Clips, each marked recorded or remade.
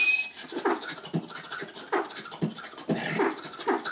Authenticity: recorded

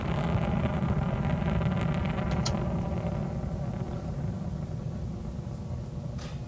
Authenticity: recorded